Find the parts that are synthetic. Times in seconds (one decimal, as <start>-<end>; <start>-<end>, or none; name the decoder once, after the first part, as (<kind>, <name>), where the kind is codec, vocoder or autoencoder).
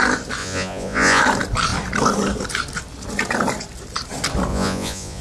0.4-1.2 (vocoder, Vocos); 4.5-5.2